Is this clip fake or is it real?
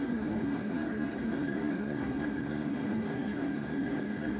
fake